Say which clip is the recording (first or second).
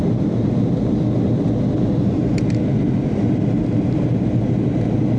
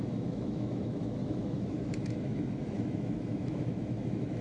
first